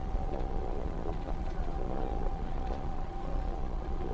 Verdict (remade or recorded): remade